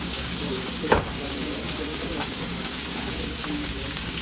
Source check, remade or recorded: remade